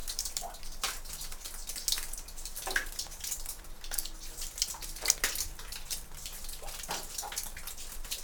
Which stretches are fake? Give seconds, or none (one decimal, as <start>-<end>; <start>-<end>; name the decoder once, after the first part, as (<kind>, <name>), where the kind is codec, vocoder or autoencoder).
0.0-0.6 (vocoder, BigVGAN v2)